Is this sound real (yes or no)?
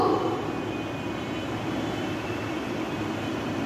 yes